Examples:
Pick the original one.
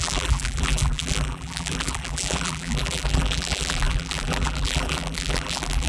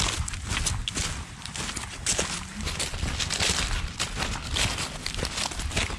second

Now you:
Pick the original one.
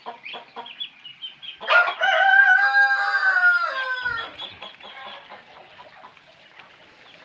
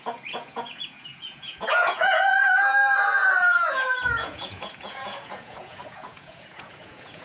first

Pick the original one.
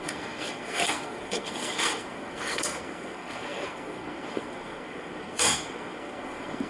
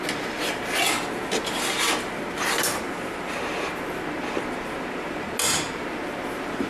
second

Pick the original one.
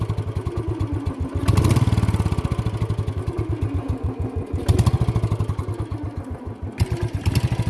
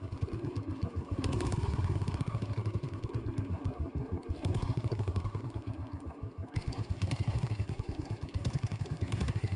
first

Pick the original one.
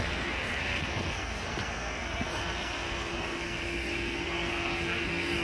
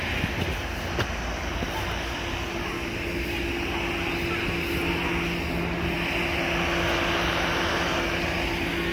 second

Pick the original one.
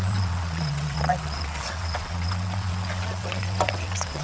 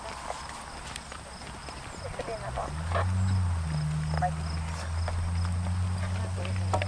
second